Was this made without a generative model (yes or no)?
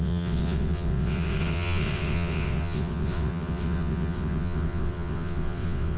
no